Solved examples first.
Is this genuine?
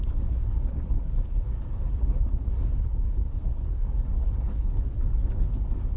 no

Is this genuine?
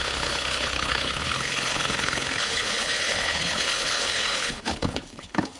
no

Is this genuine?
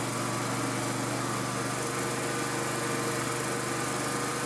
yes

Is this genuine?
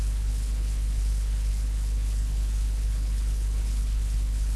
no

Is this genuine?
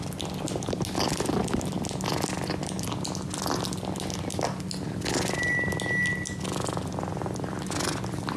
yes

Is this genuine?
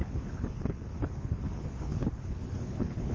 no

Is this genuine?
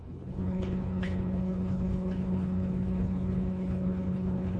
no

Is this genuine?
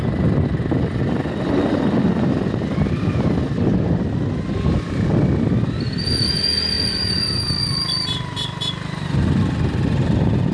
yes